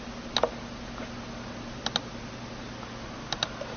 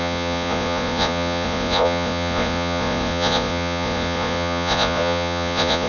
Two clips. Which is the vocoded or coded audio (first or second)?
second